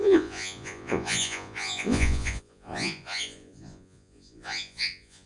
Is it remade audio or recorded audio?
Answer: remade